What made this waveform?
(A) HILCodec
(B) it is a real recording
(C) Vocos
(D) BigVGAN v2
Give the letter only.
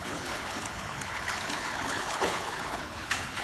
A